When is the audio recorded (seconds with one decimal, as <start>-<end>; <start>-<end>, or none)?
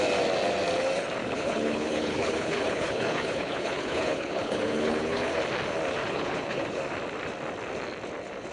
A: 0.0-1.2; 5.4-6.0; 6.8-8.5